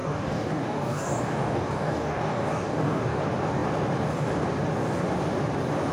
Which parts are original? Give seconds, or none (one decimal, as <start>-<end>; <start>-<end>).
3.2-5.9